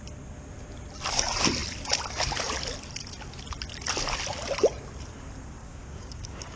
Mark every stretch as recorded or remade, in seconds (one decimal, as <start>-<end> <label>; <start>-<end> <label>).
0.0-5.6 recorded; 5.6-6.6 remade